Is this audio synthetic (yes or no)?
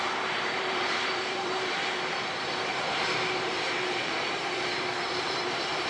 yes